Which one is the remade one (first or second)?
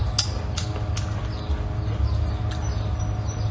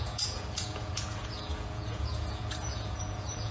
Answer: second